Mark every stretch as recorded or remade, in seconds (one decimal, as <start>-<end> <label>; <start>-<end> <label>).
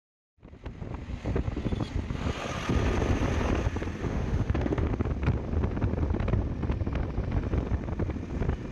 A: 0.0-4.0 recorded; 4.0-4.9 remade; 4.9-8.7 recorded